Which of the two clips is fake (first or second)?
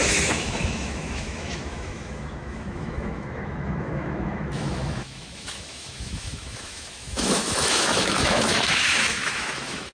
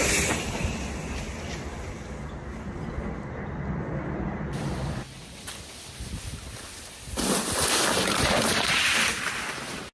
first